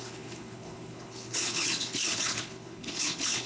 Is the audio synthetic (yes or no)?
yes